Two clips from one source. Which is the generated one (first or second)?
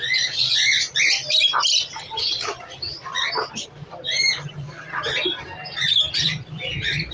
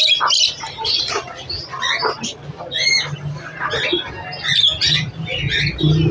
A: first